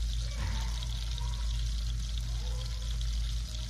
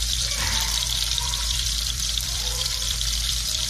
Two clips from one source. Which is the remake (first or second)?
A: second